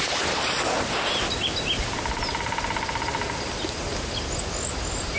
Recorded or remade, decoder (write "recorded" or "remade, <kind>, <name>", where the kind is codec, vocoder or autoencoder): recorded